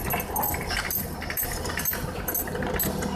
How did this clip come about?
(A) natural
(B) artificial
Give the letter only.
A